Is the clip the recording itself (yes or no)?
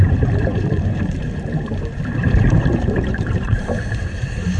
no